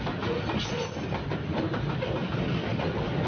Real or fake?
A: real